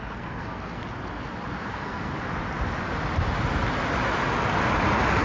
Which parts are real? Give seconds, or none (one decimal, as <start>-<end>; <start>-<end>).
0.8-1.7; 2.1-5.2